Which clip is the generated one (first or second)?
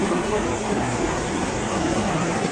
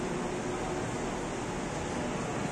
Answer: first